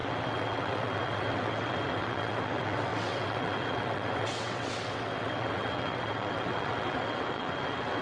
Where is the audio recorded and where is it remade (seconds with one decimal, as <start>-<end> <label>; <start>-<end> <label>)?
0.0-8.0 remade